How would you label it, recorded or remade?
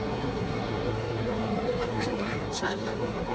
remade